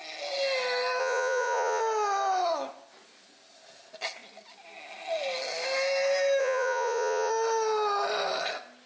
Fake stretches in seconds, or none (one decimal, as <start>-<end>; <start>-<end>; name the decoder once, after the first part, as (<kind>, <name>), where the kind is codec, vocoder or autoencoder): 1.0-1.8 (vocoder, Vocos); 6.4-7.3